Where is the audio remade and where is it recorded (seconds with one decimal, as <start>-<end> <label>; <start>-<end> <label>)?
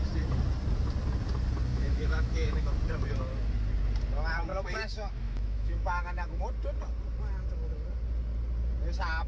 0.0-1.7 recorded; 1.7-2.7 remade; 2.7-4.5 recorded; 4.5-6.4 remade; 6.4-9.3 recorded